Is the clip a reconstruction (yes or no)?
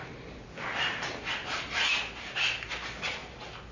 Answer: no